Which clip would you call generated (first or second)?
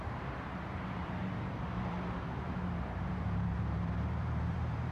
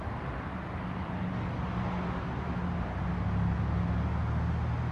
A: first